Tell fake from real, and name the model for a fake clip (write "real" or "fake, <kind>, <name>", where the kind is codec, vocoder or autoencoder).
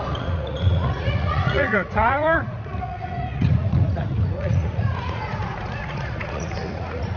fake, vocoder, Vocos